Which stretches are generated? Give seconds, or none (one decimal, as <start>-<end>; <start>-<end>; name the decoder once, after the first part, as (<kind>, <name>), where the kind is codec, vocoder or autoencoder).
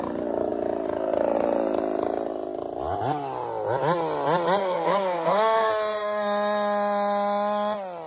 4.6-5.7 (codec, SNAC)